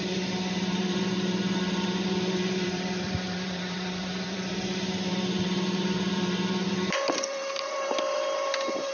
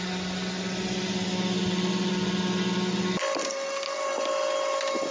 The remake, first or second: first